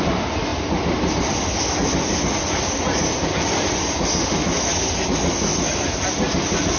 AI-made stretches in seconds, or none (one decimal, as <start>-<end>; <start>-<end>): none